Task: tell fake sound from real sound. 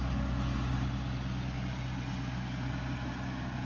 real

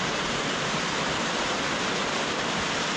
real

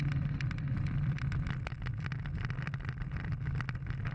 fake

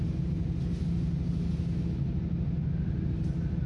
real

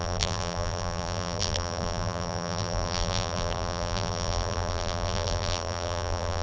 fake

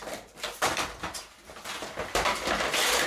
fake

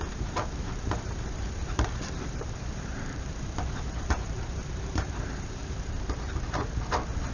fake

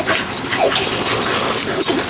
real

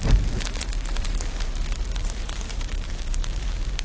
fake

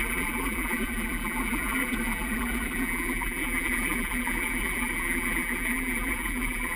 fake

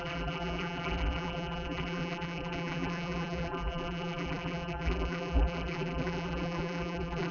fake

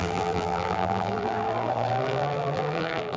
fake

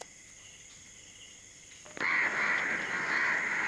fake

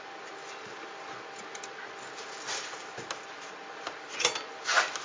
real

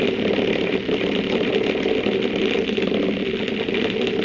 real